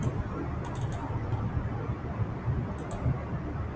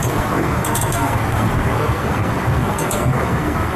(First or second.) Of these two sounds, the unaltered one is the first